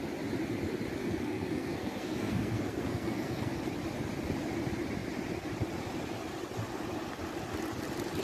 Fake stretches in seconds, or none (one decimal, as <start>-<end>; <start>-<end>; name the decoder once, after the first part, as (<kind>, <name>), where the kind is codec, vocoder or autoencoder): 1.0-3.5 (codec, SNAC)